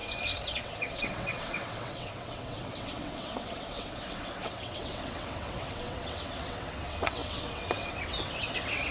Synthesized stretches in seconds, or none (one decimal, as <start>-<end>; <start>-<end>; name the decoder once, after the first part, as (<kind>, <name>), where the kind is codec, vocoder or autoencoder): 0.0-8.9 (vocoder, WaveNeXt)